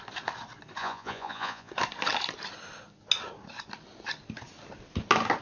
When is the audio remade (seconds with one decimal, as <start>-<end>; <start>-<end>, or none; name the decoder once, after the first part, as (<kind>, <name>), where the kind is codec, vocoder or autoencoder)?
0.8-1.7 (vocoder, Vocos)